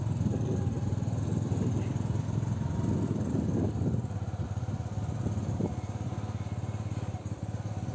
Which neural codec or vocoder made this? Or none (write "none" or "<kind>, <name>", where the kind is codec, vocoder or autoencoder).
none